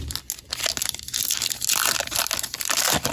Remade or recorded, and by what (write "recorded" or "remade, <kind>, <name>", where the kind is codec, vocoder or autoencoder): recorded